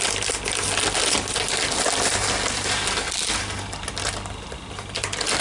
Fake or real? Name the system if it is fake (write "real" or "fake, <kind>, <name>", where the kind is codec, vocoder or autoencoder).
real